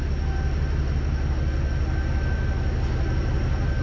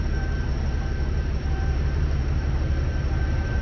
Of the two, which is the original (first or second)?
first